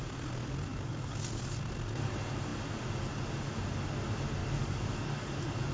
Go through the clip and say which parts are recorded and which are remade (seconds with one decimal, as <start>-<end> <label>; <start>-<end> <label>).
0.0-0.7 recorded; 0.7-1.3 remade; 1.3-4.4 recorded; 4.4-5.3 remade; 5.3-5.7 recorded